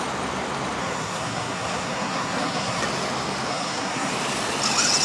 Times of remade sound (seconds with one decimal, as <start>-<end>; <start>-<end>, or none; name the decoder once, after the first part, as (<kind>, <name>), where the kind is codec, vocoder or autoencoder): 0.8-2.8 (codec, SNAC); 3.5-4.1